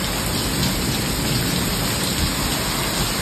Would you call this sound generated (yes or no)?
no